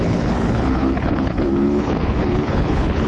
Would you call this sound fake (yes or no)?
yes